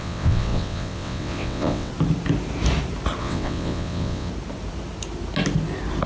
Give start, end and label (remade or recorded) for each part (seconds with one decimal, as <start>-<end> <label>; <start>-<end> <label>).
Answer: 0.0-1.9 remade; 1.9-3.2 recorded; 3.2-4.3 remade; 4.3-6.1 recorded